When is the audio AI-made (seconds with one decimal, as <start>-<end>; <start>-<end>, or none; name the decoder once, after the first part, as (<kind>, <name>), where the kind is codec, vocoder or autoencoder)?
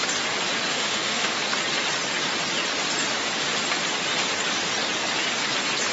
0.7-1.4 (autoencoder, DAC-VAE)